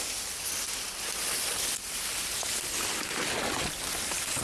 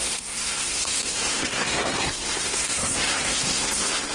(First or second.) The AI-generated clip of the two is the second